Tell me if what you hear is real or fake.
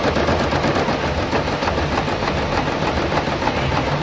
real